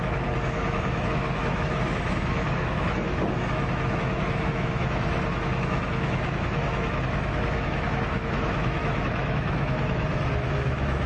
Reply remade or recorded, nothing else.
remade